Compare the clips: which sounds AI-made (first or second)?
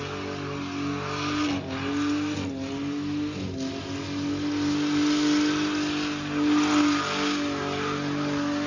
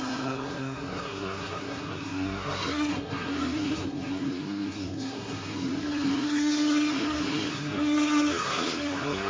second